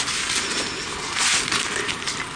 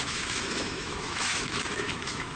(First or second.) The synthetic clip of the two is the second